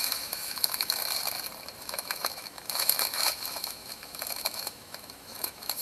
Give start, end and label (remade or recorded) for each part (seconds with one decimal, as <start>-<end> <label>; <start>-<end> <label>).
0.0-1.0 remade; 1.0-1.8 recorded; 1.8-5.8 remade